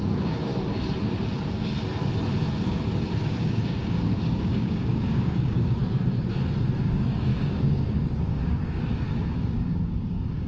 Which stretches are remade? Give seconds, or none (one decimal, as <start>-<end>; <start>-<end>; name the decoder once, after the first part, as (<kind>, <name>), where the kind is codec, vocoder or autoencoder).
0.0-0.5 (codec, DAC); 2.5-5.8; 6.8-10.5